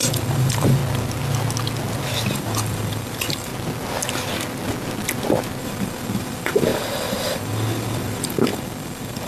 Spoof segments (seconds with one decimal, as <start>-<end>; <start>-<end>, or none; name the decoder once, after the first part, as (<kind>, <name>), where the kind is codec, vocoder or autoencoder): 0.0-0.8 (vocoder, BigVGAN v2); 2.3-3.5; 5.6-9.3

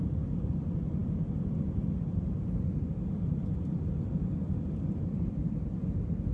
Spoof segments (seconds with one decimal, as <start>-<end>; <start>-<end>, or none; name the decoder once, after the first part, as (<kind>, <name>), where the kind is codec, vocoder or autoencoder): none

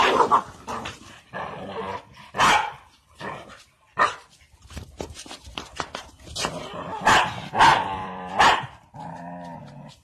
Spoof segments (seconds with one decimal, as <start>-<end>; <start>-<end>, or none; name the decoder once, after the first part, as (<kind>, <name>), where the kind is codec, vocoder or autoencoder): 0.7-1.8 (vocoder, BigVGAN v2); 7.7-8.3

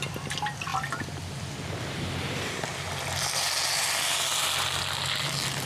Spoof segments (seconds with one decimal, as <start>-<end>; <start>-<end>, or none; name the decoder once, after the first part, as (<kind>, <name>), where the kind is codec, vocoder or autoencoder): none

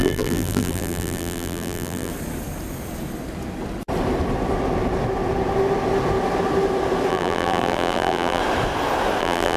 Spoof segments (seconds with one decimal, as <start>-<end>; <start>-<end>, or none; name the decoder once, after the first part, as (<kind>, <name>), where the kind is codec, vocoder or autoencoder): 0.0-2.1 (vocoder, BigVGAN v2); 7.1-8.4; 9.2-9.6